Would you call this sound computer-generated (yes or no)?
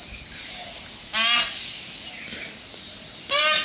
no